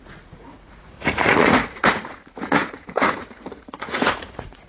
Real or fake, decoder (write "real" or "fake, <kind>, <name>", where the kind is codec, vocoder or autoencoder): fake, vocoder, Vocos